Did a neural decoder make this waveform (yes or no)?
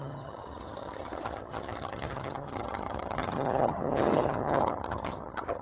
yes